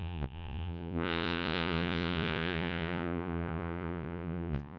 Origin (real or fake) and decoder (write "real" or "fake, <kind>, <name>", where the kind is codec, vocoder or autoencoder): fake, vocoder, Vocos